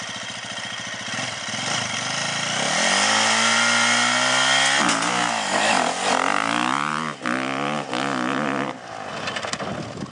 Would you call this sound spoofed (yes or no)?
no